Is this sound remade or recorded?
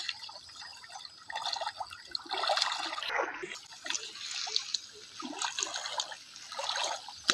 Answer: recorded